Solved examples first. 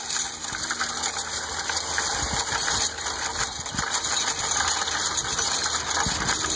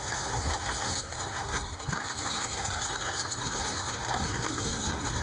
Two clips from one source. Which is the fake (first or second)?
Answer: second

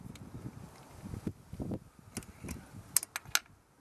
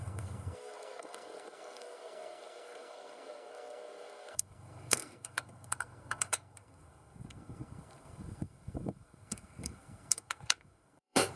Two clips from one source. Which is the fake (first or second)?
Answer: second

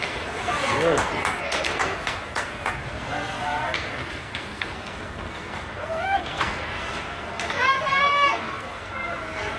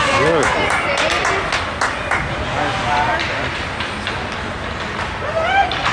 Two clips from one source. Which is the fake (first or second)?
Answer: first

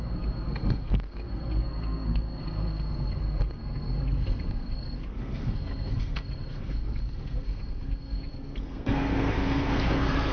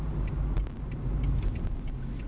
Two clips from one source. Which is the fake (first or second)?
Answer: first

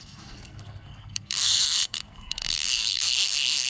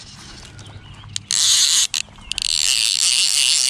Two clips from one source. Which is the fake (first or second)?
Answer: first